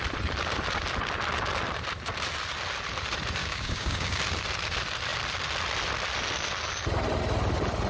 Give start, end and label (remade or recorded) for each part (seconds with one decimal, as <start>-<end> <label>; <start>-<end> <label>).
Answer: 0.0-3.4 recorded; 3.4-4.2 remade; 4.2-7.9 recorded